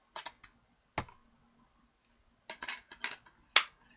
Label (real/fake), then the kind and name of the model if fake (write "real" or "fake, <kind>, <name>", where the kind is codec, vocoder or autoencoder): real